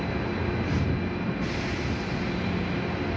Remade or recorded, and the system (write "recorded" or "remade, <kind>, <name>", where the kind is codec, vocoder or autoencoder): recorded